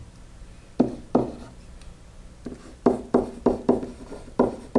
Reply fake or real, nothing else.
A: real